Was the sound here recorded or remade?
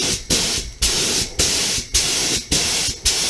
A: recorded